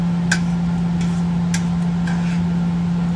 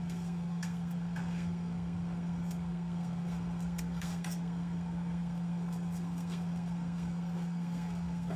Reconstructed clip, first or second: second